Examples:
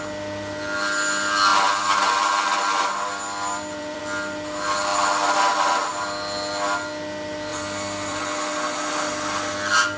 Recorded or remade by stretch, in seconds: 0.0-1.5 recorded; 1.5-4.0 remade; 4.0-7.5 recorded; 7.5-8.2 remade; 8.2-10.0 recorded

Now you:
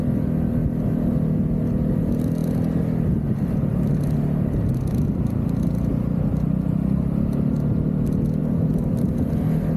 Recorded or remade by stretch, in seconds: 0.0-8.4 recorded; 8.4-9.3 remade; 9.3-9.8 recorded

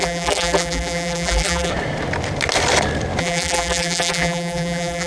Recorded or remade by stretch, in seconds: 0.0-1.7 remade; 1.7-3.2 recorded; 3.2-5.1 remade

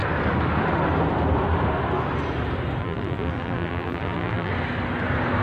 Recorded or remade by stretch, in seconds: 0.0-2.8 recorded; 2.8-4.5 remade; 4.5-5.4 recorded

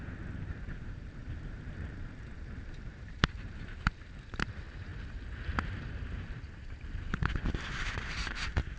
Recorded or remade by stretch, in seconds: 0.0-4.9 remade; 4.9-5.6 recorded; 5.6-8.8 remade